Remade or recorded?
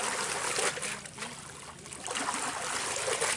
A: recorded